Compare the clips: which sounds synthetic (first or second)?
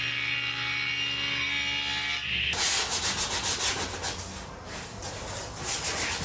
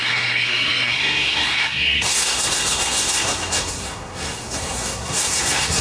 second